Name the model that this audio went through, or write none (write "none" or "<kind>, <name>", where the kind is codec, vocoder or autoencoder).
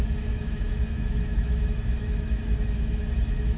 autoencoder, DAC-VAE